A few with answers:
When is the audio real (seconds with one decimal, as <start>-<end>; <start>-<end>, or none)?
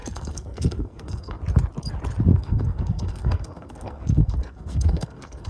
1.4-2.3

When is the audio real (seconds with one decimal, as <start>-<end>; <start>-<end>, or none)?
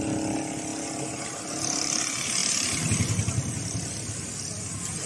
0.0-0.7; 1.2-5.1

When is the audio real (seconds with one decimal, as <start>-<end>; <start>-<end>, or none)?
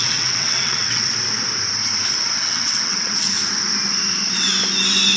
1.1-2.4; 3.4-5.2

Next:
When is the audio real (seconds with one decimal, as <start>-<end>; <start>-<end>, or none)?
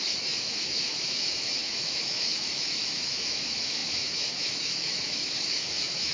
none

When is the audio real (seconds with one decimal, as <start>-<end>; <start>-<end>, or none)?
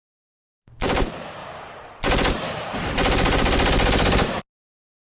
0.0-5.0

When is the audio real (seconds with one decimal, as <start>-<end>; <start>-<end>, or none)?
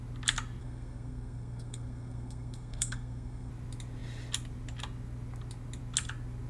0.0-0.6; 3.5-6.5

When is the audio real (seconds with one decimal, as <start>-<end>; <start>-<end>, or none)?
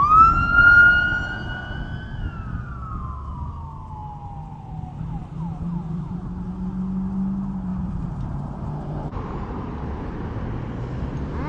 0.0-5.2; 6.2-7.7; 10.3-11.5